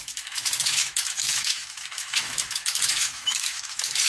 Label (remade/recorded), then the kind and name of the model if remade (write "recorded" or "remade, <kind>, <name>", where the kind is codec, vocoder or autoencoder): remade, autoencoder, DAC-VAE